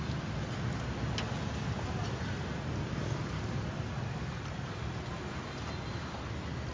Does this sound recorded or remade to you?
recorded